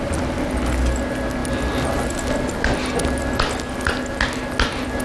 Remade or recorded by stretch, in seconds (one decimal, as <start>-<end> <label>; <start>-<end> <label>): 0.0-5.0 recorded